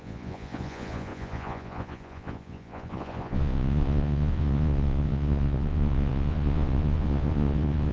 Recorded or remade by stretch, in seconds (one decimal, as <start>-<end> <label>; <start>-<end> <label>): 0.0-7.9 remade